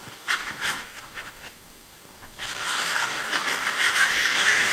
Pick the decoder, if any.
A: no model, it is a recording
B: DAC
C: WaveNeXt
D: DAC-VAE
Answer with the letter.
B